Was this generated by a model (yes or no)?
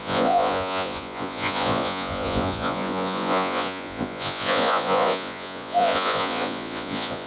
yes